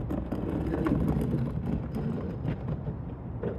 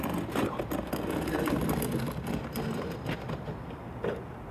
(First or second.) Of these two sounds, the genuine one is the second